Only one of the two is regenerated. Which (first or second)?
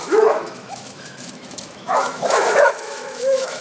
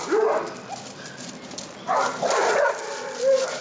first